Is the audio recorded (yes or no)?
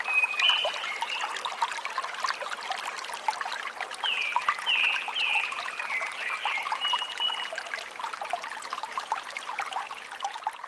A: yes